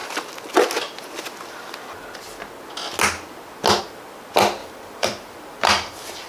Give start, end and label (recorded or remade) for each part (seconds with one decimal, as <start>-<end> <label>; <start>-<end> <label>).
0.0-4.6 recorded; 4.6-6.3 remade